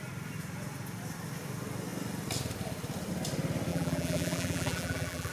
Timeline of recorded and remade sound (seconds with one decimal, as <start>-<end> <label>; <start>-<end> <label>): 0.0-3.7 recorded; 3.7-5.3 remade